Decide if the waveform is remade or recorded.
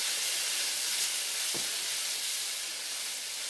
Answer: recorded